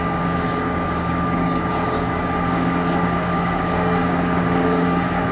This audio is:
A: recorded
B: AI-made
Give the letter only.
B